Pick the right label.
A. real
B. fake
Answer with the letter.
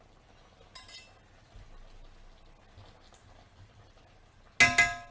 A